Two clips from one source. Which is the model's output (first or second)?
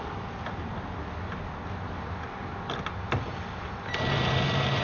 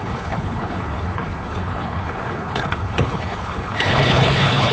second